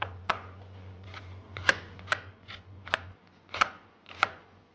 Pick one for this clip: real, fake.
fake